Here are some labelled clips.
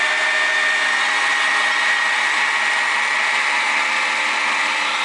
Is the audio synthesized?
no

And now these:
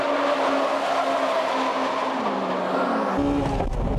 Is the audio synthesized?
no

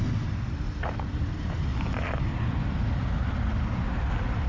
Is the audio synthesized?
no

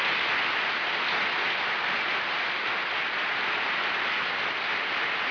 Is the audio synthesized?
no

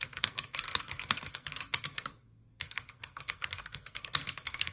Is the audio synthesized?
yes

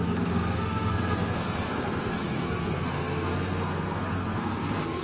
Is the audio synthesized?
yes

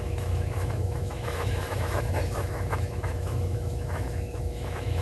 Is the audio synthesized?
yes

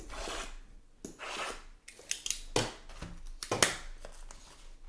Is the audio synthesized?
no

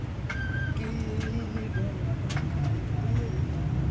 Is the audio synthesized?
no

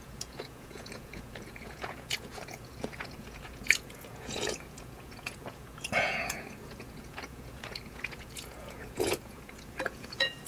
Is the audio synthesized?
yes